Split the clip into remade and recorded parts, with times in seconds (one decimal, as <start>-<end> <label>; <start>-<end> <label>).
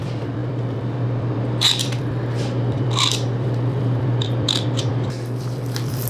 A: 0.0-6.1 remade